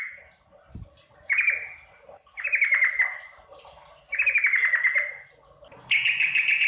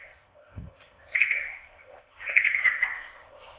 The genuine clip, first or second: first